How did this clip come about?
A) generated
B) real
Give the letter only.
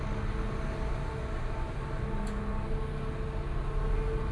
B